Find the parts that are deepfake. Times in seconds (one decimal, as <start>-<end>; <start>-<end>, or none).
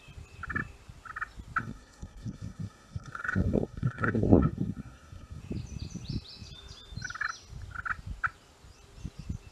1.6-5.4